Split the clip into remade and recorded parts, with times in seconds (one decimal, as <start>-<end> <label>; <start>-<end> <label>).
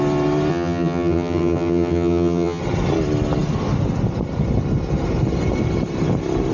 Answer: 0.0-0.5 recorded; 0.5-2.6 remade; 2.6-6.5 recorded